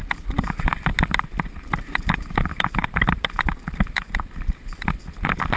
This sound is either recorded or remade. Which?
recorded